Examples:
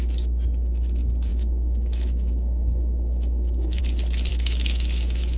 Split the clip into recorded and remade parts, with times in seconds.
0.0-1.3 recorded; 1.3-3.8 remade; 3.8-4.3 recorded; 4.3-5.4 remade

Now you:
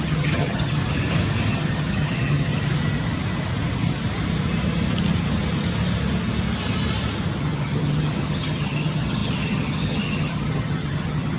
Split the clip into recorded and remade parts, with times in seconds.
0.0-0.8 remade; 0.8-1.5 recorded; 1.5-2.5 remade; 2.5-7.4 recorded; 7.4-11.4 remade

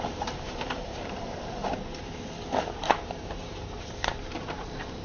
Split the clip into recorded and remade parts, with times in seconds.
0.0-1.6 remade; 1.6-2.8 recorded; 2.8-5.0 remade

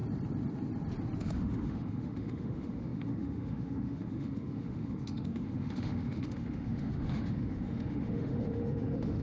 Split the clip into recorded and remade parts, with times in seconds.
0.0-1.2 recorded; 1.2-9.2 remade

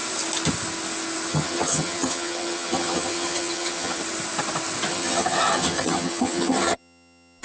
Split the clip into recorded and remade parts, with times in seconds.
0.0-1.3 recorded; 1.3-4.0 remade; 4.0-4.9 recorded; 4.9-7.4 remade

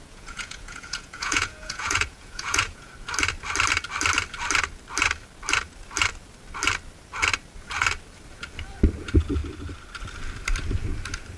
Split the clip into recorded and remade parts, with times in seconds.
0.0-2.9 remade; 2.9-11.4 recorded

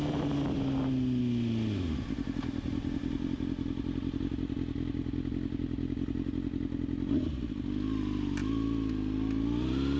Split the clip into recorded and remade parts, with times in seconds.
0.0-10.0 recorded

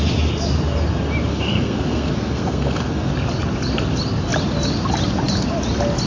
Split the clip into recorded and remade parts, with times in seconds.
0.0-1.3 recorded; 1.3-3.1 remade; 3.1-6.1 recorded